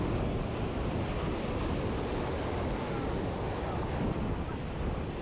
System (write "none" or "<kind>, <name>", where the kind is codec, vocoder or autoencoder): none